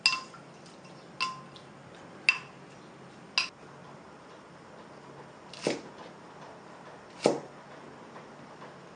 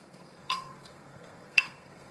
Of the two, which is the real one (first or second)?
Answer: first